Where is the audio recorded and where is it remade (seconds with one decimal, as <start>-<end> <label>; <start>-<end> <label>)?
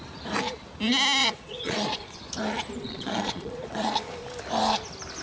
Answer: 0.0-1.2 recorded; 1.2-2.2 remade; 2.2-2.8 recorded; 2.8-3.9 remade; 3.9-5.2 recorded